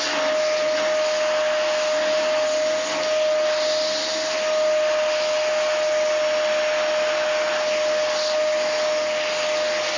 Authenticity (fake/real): real